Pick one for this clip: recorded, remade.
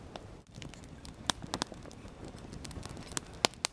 recorded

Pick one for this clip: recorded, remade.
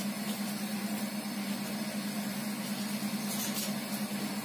recorded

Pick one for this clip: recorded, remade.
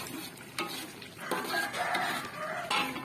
recorded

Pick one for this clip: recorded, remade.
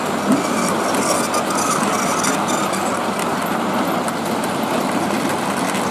recorded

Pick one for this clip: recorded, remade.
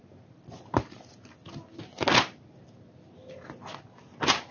recorded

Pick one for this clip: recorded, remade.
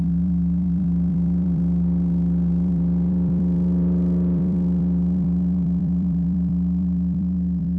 remade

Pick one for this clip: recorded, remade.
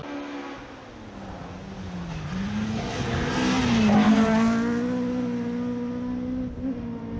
recorded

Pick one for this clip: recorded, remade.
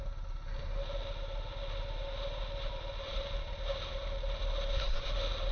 recorded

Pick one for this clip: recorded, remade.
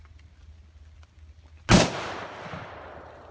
recorded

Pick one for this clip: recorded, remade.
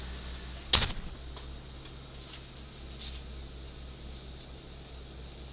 recorded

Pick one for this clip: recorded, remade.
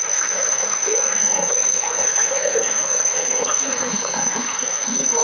remade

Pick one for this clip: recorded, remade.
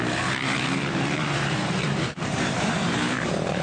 remade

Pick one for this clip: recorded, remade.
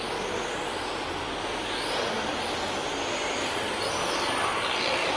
recorded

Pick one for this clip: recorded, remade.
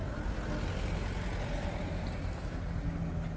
recorded